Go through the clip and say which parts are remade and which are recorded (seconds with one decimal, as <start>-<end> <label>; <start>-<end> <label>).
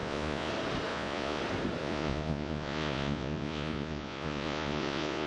0.0-0.5 remade; 0.5-0.9 recorded; 0.9-1.4 remade; 1.4-1.8 recorded; 1.8-5.3 remade